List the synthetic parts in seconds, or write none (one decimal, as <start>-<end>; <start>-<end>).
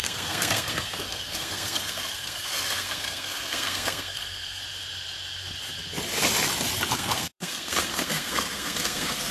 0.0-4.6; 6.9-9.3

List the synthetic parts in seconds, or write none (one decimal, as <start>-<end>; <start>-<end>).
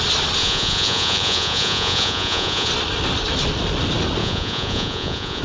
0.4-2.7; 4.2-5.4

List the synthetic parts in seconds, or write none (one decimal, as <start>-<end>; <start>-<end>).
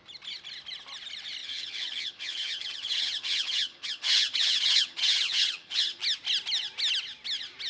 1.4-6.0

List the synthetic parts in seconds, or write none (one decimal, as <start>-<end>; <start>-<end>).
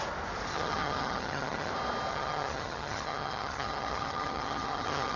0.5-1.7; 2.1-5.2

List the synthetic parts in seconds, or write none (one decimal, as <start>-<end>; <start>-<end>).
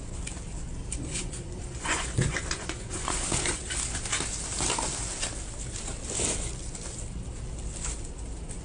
1.1-3.7